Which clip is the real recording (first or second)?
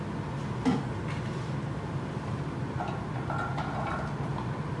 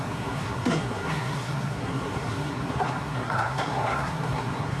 first